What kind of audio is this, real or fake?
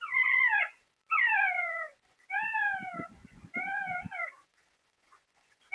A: fake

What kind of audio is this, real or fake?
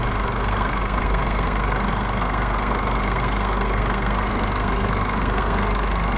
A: fake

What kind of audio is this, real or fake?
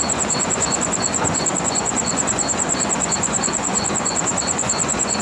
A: fake